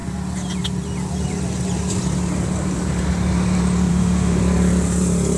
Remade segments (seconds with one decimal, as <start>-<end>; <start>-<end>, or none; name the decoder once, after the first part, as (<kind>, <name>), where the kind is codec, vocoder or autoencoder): 3.9-4.4 (autoencoder, DAC-VAE)